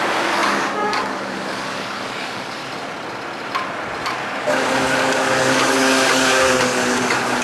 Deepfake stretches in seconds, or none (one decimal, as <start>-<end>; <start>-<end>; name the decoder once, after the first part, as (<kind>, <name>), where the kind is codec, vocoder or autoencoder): 0.0-2.6 (codec, DAC); 4.2-7.4